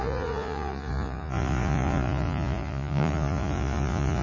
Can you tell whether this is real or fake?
fake